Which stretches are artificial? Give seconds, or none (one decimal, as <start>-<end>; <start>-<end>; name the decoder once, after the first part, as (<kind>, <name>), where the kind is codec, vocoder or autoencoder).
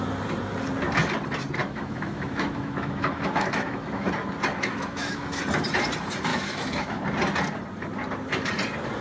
1.6-4.1 (autoencoder, DAC-VAE); 4.5-5.4; 6.3-7.0